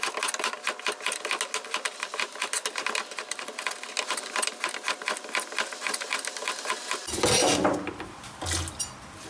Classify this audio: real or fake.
real